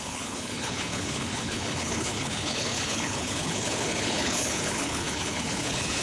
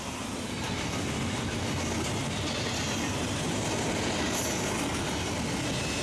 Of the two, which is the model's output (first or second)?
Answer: first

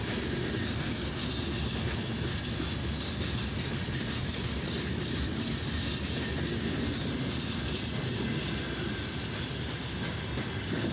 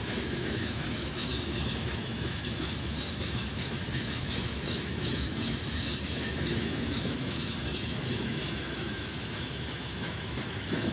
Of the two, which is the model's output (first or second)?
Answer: second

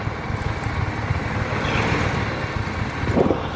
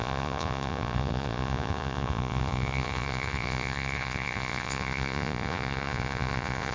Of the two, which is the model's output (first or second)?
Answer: second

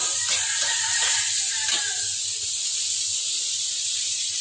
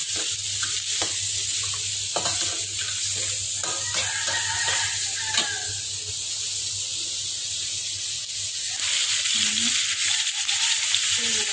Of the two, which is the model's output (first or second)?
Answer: first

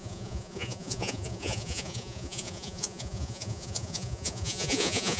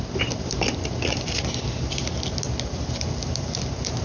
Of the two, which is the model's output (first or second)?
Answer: first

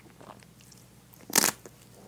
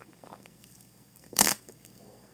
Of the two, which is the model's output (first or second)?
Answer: second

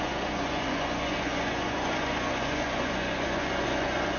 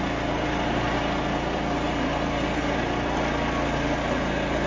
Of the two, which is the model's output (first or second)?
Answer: first